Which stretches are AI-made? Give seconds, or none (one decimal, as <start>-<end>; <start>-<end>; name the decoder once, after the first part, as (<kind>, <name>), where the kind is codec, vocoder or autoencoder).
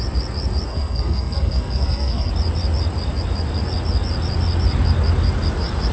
0.7-2.3 (codec, SNAC)